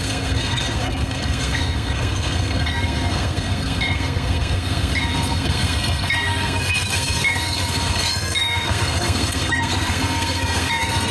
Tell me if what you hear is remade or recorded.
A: remade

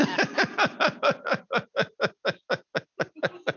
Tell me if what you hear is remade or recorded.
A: recorded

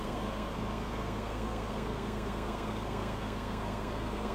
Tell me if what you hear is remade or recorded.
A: remade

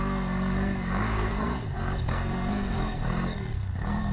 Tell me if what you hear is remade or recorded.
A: remade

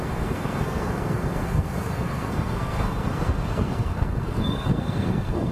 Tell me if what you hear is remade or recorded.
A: remade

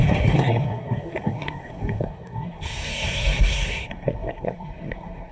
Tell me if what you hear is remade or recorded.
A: remade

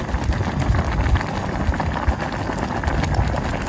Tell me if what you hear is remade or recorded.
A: recorded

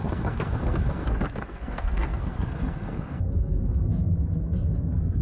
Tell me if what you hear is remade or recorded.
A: remade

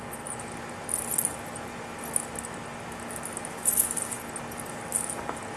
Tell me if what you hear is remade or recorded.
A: recorded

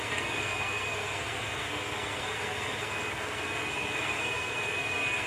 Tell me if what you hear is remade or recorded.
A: remade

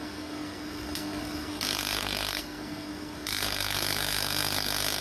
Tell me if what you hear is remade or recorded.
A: remade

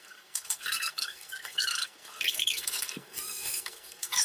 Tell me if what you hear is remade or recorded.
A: remade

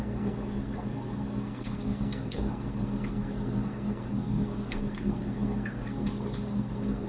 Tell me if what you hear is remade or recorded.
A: remade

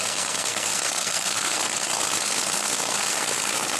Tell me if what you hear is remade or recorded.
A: remade